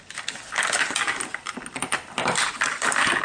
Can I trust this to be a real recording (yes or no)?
yes